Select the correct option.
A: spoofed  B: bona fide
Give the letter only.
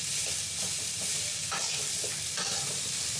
B